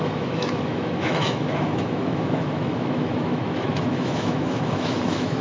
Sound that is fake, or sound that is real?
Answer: fake